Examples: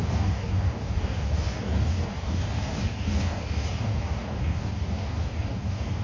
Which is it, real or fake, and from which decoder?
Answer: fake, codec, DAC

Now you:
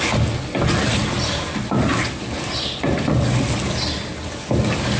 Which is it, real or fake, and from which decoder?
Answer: real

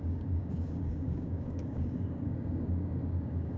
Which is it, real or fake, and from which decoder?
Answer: fake, codec, DAC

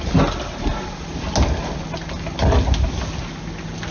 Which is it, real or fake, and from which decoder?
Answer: real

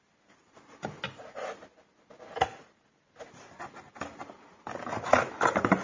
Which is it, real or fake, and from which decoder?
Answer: real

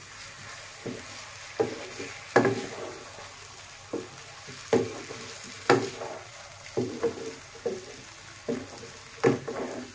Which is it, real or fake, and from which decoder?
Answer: real